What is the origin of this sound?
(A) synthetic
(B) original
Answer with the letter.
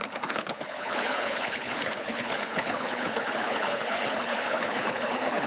A